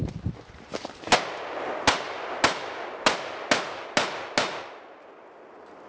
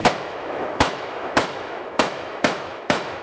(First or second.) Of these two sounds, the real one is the first